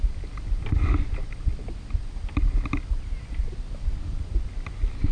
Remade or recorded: recorded